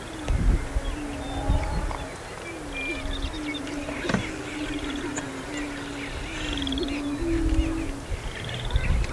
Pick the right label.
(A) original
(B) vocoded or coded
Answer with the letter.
A